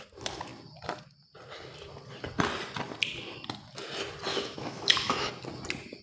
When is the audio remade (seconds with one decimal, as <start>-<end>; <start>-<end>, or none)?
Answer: 4.3-5.3